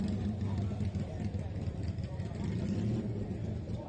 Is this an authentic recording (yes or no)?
yes